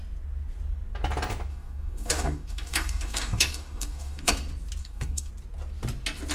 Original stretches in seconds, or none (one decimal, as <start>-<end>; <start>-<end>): 0.0-1.5; 4.3-4.8; 5.3-6.3